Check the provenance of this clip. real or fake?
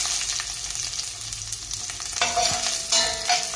real